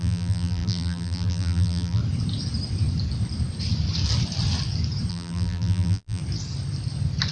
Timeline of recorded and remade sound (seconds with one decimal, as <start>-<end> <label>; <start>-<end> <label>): 0.0-2.0 remade; 2.0-5.1 recorded; 5.1-6.2 remade; 6.2-7.3 recorded